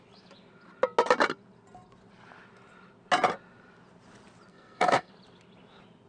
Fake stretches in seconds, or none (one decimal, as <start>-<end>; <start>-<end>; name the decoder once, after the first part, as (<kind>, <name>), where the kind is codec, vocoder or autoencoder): 4.5-5.1 (codec, SNAC)